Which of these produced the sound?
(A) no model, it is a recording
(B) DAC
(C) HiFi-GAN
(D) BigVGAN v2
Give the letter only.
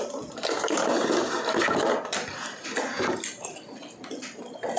A